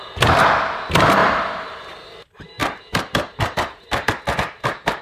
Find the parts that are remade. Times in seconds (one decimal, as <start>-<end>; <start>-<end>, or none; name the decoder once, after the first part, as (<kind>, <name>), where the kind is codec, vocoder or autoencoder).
1.2-1.8 (vocoder, BigVGAN v2); 2.6-4.1